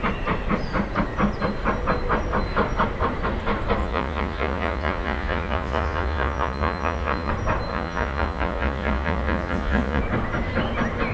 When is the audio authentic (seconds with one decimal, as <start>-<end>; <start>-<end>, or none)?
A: 0.0-3.8; 7.3-7.7; 10.0-11.1